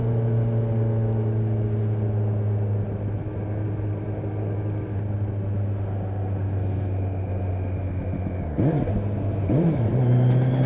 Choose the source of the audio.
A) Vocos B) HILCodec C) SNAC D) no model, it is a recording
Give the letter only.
D